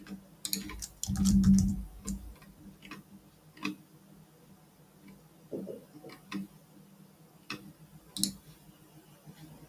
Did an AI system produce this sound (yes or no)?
no